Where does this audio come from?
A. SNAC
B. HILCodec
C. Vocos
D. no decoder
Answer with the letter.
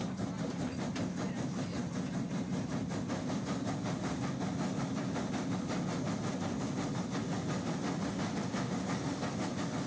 D